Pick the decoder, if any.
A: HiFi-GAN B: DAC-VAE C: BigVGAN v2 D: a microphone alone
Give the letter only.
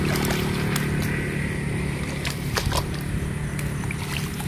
D